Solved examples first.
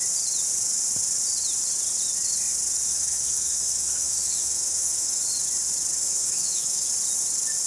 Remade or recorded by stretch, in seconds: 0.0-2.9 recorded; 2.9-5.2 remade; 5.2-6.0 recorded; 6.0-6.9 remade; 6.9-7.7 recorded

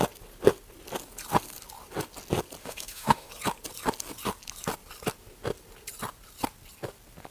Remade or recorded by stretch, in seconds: 0.0-2.6 recorded; 2.6-3.3 remade; 3.3-7.3 recorded

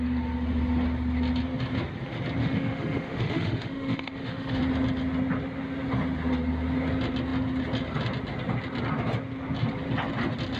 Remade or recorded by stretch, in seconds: 0.0-2.4 recorded; 2.4-4.6 remade; 4.6-10.6 recorded

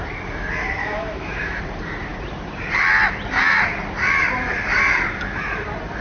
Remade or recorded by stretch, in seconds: 0.0-0.8 recorded; 0.8-1.6 remade; 1.6-6.0 recorded

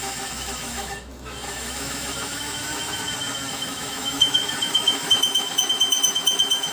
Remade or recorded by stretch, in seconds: 0.0-3.0 remade; 3.0-3.5 recorded; 3.5-6.7 remade

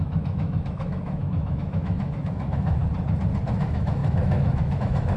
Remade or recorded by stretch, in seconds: 0.0-2.8 remade; 2.8-3.6 recorded; 3.6-5.2 remade

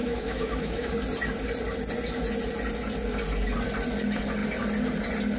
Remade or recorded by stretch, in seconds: 0.0-0.9 remade; 0.9-5.4 recorded